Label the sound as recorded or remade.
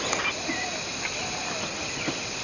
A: recorded